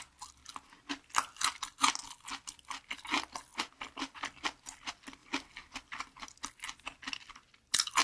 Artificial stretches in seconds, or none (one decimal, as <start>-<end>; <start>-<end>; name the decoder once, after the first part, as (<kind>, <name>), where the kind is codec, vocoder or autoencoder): none